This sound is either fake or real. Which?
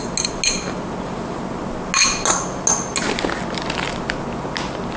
real